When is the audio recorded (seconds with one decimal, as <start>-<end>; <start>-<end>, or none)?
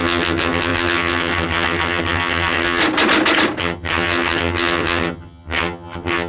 2.8-3.6